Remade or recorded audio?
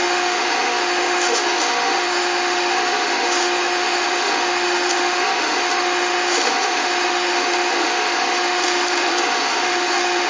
remade